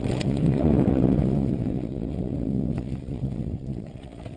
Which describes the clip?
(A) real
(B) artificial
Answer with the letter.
B